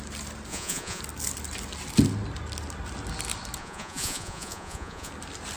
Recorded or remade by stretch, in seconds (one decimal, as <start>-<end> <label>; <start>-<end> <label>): 0.0-0.5 recorded; 0.5-1.0 remade; 1.0-3.6 recorded; 3.6-5.1 remade; 5.1-5.6 recorded